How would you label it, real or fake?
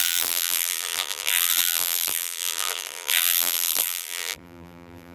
fake